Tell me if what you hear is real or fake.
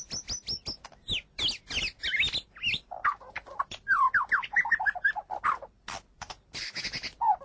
real